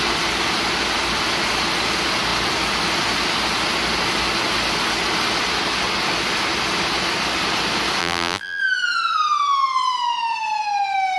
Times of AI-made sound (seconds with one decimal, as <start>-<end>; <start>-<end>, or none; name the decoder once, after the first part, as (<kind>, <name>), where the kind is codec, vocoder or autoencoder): 8.0-8.6 (vocoder, BigVGAN v2)